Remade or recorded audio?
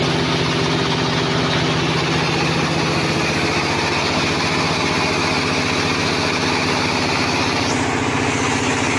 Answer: recorded